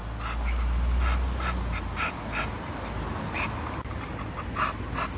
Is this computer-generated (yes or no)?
no